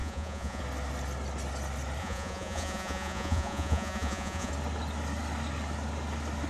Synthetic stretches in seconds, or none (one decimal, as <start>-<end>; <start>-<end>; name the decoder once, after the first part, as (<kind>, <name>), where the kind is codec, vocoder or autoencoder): 0.0-0.6 (vocoder, Vocos); 2.0-4.5